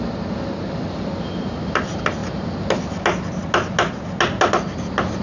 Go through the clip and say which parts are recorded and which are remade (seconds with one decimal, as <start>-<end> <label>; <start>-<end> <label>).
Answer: 0.0-5.2 recorded

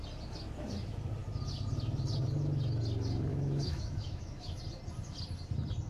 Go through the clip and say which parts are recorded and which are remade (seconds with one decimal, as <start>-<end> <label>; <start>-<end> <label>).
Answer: 0.0-3.3 recorded; 3.3-4.6 remade; 4.6-5.9 recorded